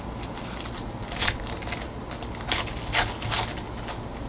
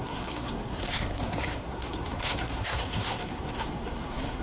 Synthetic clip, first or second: second